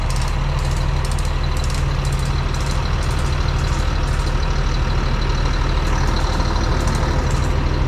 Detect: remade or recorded recorded